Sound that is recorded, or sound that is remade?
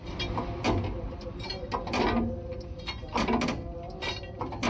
recorded